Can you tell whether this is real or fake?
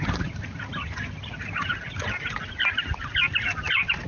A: real